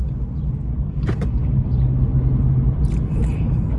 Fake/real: real